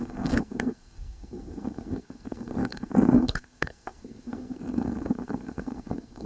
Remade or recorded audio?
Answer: remade